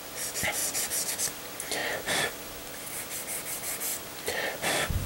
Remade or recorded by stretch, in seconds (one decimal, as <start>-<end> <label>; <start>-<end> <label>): 0.0-5.1 recorded

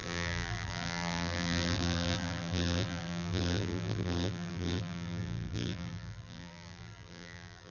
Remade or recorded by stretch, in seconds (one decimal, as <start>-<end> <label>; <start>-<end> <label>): 0.0-7.7 remade

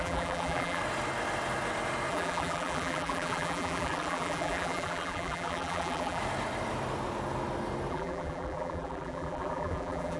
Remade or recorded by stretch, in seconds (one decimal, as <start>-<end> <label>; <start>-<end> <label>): 0.0-0.8 remade; 0.8-2.1 recorded; 2.1-6.2 remade; 6.2-7.9 recorded; 7.9-10.2 remade

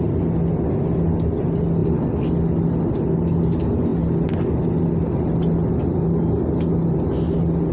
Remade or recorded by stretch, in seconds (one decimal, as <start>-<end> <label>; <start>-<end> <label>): 0.0-7.7 recorded

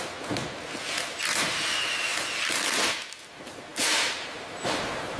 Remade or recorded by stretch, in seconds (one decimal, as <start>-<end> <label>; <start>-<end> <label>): 0.0-3.7 recorded; 3.7-5.2 remade

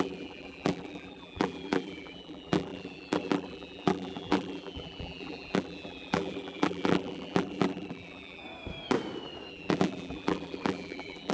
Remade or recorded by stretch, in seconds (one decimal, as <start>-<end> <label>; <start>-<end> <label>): 0.0-8.4 remade; 8.4-9.5 recorded; 9.5-11.3 remade